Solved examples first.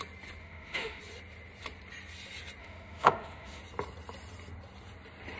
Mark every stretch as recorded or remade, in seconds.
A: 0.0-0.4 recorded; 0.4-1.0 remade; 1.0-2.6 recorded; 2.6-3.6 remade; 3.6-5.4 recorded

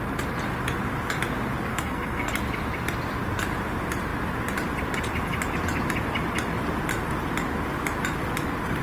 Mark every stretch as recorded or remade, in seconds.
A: 0.0-1.7 recorded; 1.7-2.3 remade; 2.3-8.8 recorded

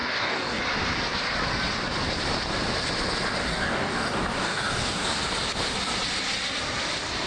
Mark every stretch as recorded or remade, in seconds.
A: 0.0-0.6 remade; 0.6-3.4 recorded; 3.4-5.2 remade; 5.2-7.3 recorded

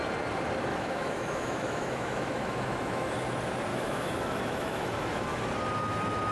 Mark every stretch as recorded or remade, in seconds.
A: 0.0-0.7 recorded; 0.7-3.1 remade; 3.1-3.7 recorded; 3.7-5.4 remade; 5.4-6.3 recorded

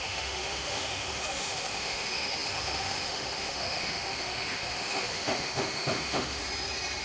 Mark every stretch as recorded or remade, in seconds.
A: 0.0-6.4 remade; 6.4-7.0 recorded

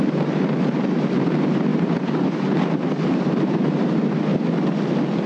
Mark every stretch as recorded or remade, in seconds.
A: 0.0-4.3 remade; 4.3-5.3 recorded

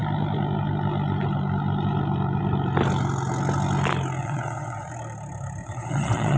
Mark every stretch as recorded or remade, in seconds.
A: 0.0-4.2 recorded; 4.2-4.9 remade; 4.9-5.6 recorded; 5.6-6.4 remade